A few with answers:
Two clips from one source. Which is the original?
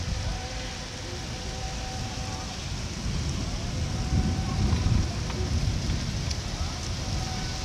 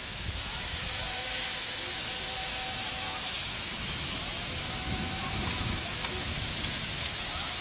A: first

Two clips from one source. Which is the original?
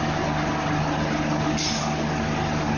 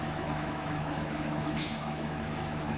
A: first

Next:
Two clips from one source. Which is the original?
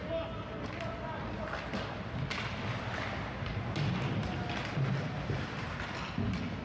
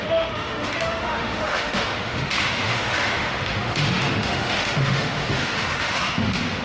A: first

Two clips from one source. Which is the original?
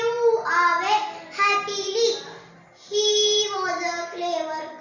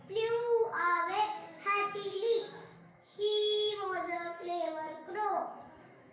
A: first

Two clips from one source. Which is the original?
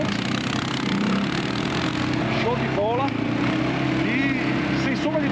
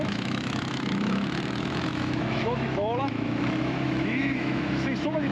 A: first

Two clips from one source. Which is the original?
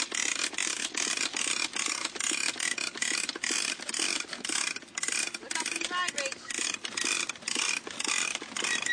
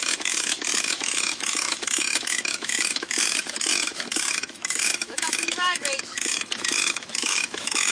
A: first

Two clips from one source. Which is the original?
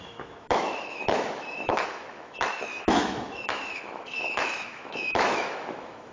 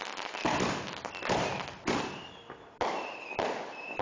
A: second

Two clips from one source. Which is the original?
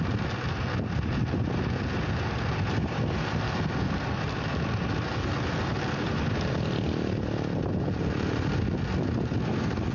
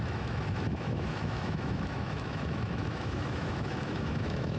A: first